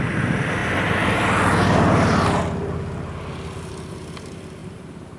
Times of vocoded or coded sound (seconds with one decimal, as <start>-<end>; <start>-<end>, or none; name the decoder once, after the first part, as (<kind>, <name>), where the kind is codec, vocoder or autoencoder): 4.6-5.2 (vocoder, BigVGAN v2)